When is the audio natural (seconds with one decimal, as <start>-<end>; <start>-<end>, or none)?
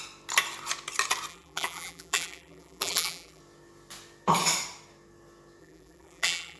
0.0-1.3; 3.4-5.6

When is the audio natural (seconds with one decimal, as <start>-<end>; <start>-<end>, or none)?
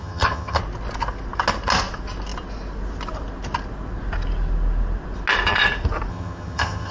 0.6-6.1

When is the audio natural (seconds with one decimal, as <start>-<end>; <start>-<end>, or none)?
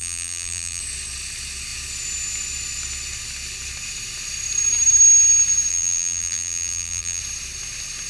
0.8-5.7; 7.2-8.1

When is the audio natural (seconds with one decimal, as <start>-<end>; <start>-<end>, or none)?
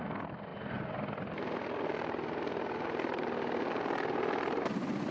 0.0-5.1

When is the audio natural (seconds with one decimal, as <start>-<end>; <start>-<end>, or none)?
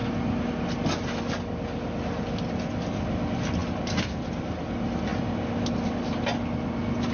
0.0-7.1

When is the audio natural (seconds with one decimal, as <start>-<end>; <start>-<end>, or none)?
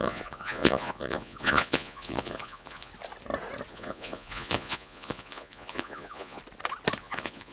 2.9-3.7; 6.4-7.0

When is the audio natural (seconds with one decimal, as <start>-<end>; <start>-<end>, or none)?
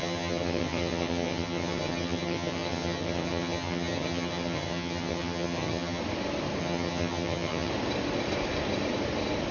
6.0-6.6; 7.7-9.5